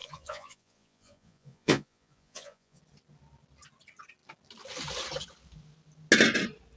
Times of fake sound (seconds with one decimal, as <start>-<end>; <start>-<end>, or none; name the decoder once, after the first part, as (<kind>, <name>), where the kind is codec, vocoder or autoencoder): 0.0-2.8 (vocoder, Vocos)